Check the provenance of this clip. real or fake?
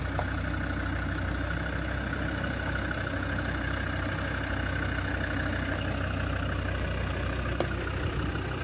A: real